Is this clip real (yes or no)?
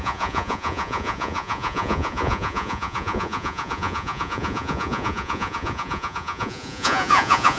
no